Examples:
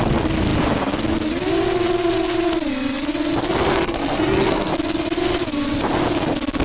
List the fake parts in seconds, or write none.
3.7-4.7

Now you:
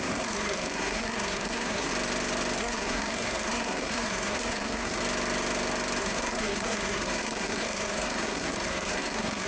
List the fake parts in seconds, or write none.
0.0-1.9; 2.6-5.0; 6.0-9.5

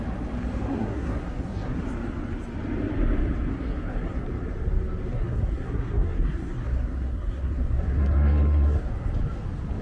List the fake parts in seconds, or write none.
0.7-1.8; 3.5-4.2; 5.1-8.9